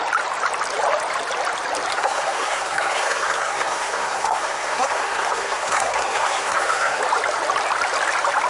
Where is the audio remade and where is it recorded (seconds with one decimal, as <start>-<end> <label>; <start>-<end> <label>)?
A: 0.0-1.9 recorded; 1.9-7.0 remade; 7.0-8.5 recorded